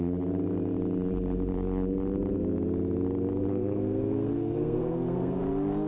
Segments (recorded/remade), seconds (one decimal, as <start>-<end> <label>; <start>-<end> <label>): 0.0-3.5 recorded; 3.5-5.4 remade; 5.4-5.9 recorded

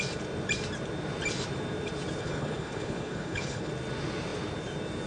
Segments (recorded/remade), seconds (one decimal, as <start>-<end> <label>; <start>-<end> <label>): 0.0-2.2 recorded; 2.2-3.7 remade; 3.7-5.1 recorded

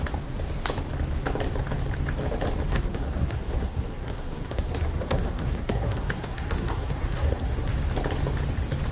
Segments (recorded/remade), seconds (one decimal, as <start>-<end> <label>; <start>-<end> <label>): 0.0-2.7 recorded; 2.7-7.7 remade; 7.7-8.9 recorded

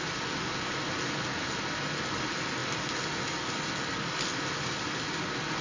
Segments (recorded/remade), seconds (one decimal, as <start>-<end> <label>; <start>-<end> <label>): 0.0-5.6 recorded

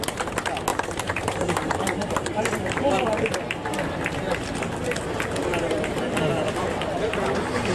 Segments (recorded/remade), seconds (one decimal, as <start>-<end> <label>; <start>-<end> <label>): 0.0-0.7 recorded; 0.7-3.3 remade; 3.3-5.5 recorded; 5.5-6.2 remade; 6.2-7.7 recorded

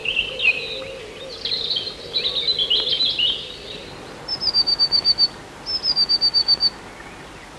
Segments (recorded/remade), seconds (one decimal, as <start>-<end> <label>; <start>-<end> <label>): 0.0-7.6 recorded

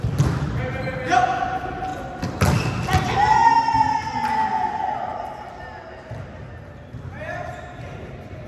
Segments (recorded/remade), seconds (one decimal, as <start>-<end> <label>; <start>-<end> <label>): 0.0-8.5 recorded